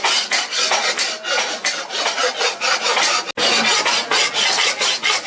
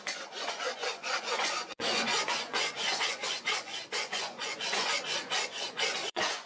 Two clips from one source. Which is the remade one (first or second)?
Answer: second